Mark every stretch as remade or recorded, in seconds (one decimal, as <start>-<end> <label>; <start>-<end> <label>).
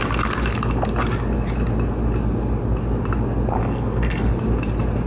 0.0-3.6 recorded; 3.6-4.3 remade; 4.3-5.1 recorded